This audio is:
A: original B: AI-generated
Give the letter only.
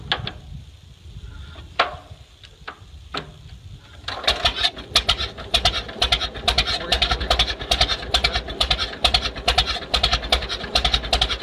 A